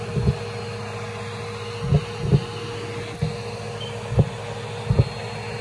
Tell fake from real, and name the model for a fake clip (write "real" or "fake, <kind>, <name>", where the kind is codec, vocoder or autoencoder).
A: real